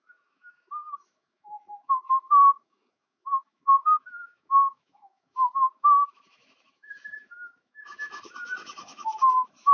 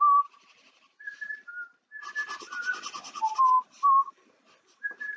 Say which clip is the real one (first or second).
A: second